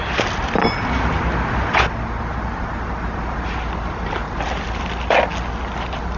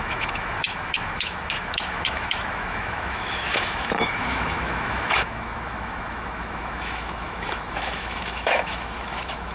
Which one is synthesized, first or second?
second